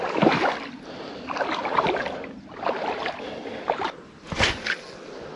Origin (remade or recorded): recorded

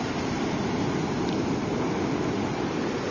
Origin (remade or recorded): recorded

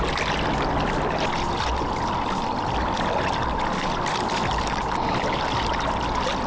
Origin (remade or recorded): recorded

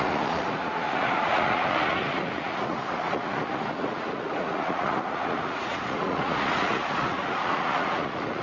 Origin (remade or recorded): remade